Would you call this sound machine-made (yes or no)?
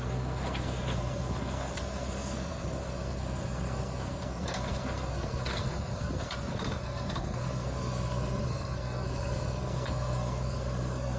yes